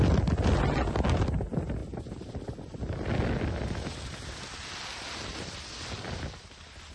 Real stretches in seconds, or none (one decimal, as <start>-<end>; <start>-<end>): 0.0-6.9